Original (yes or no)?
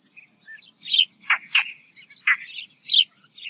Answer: yes